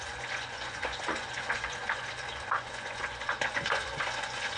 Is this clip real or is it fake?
fake